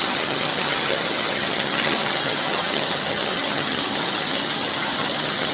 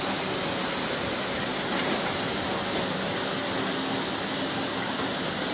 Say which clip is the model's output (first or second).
first